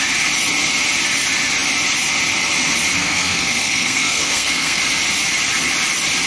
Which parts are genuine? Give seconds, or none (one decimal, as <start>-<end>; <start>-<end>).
0.0-3.0; 4.8-6.3